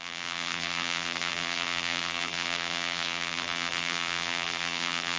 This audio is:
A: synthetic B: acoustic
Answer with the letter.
A